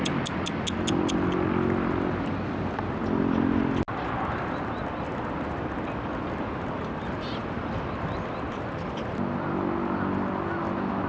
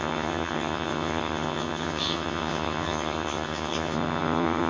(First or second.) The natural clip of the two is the first